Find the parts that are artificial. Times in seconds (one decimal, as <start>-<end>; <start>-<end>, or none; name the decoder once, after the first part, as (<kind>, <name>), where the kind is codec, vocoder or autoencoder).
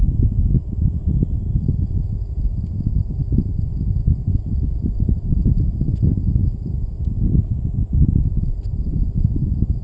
none